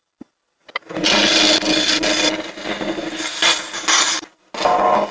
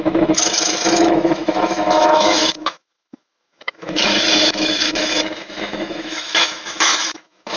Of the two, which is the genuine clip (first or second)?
first